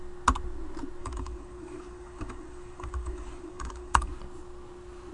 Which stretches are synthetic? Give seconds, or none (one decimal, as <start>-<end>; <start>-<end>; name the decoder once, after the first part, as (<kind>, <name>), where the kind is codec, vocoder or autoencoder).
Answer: 1.0-4.1 (codec, DAC)